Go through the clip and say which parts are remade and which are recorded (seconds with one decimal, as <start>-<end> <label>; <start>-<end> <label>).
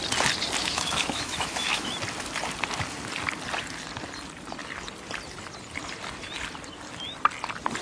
0.0-0.6 recorded; 0.6-1.9 remade; 1.9-7.8 recorded